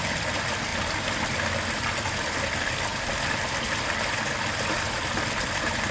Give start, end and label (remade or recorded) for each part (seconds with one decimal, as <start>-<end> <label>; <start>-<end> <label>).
0.0-5.9 recorded